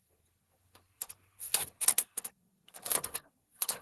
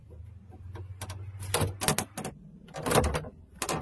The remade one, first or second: first